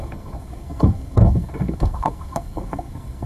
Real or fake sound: fake